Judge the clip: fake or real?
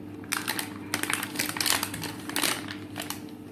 real